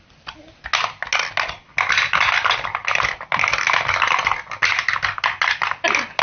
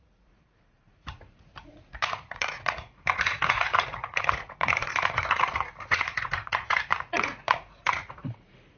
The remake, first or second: second